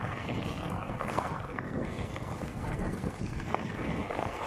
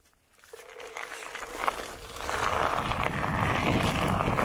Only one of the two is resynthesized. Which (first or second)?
first